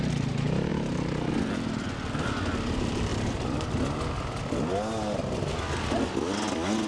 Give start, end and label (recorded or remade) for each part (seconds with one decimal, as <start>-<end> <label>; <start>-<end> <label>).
0.0-6.9 recorded